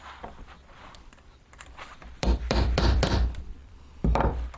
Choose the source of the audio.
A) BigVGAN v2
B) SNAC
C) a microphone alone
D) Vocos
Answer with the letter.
A